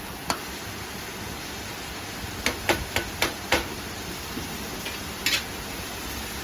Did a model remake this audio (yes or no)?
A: no